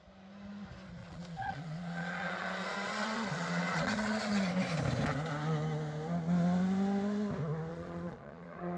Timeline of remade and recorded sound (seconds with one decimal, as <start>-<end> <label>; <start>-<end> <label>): 0.0-1.0 recorded; 1.0-4.5 remade; 4.5-7.7 recorded; 7.7-8.8 remade